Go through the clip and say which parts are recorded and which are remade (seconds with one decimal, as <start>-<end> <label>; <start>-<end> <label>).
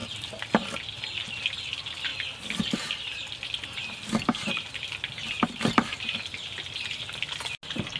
0.0-8.0 recorded